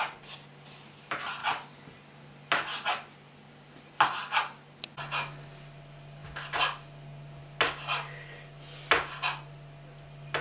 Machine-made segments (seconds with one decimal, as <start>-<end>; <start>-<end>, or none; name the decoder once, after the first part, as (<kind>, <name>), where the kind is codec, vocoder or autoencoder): none